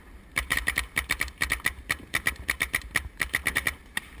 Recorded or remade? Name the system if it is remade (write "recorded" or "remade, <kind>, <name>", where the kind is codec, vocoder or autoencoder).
remade, vocoder, BigVGAN v2